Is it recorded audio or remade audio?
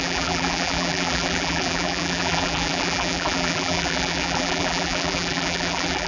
remade